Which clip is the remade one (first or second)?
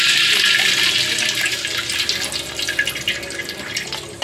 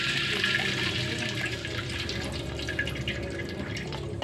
second